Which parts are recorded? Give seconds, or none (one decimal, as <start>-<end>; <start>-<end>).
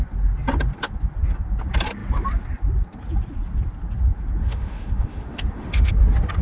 0.0-4.4; 5.9-6.4